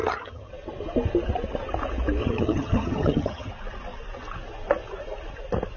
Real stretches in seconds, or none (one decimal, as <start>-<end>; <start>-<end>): 0.5-2.2; 3.5-5.8